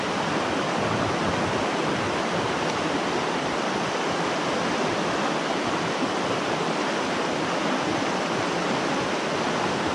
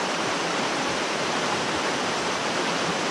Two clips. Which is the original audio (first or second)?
first